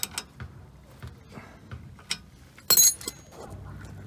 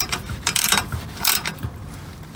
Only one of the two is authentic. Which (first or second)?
first